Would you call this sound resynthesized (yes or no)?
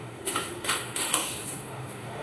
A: yes